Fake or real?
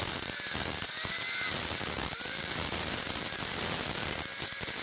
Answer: real